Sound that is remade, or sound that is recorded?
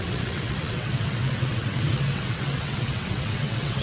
remade